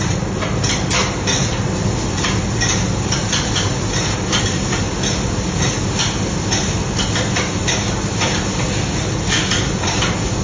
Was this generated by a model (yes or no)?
no